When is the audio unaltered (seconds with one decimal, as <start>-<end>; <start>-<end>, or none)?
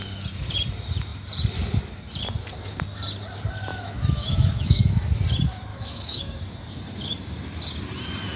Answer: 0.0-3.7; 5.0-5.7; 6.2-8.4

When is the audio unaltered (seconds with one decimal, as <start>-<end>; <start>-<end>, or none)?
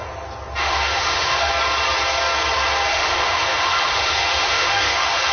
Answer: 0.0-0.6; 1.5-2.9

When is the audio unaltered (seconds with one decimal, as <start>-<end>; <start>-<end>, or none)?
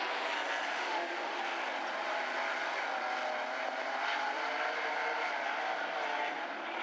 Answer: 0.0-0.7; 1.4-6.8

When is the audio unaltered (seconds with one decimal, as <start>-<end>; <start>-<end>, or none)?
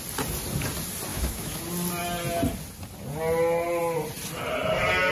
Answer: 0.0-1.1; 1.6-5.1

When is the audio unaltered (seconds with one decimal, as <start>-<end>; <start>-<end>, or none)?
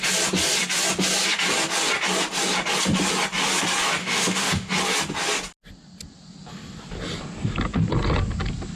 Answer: 0.0-4.0; 4.7-8.8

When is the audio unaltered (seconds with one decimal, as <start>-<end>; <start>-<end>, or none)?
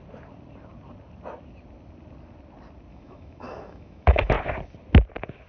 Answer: 0.0-2.9; 4.3-5.5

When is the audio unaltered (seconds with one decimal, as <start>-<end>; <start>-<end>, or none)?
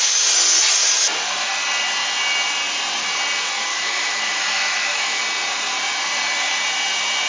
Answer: 0.0-3.7; 5.2-7.3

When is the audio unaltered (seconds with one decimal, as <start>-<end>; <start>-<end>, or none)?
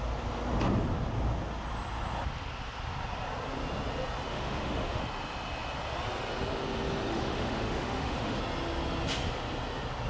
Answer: 0.0-4.3; 5.0-7.1; 8.4-10.1